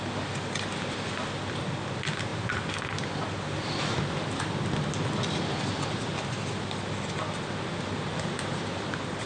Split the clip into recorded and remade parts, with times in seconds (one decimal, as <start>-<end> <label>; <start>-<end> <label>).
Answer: 0.0-9.3 recorded

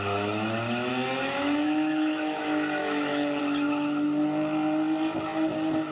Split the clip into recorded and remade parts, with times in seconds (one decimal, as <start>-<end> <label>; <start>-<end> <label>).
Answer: 0.0-0.9 recorded; 0.9-2.4 remade; 2.4-2.8 recorded; 2.8-3.4 remade; 3.4-5.9 recorded